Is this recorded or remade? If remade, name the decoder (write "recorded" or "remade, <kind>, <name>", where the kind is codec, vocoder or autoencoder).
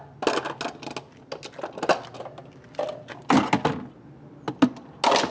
recorded